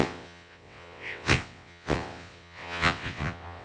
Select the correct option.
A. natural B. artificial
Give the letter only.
B